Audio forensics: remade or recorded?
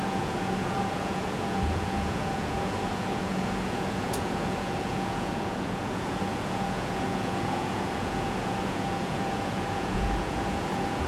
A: remade